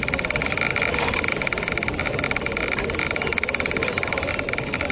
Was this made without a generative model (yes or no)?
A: yes